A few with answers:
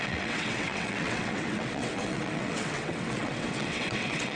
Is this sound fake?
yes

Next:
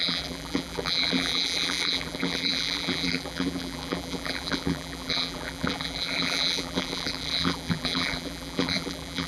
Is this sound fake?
yes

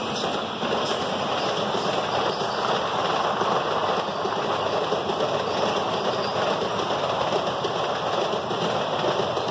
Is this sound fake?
no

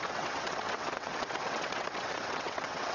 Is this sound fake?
yes